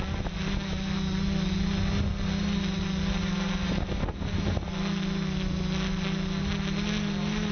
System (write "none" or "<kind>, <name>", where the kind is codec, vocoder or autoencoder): none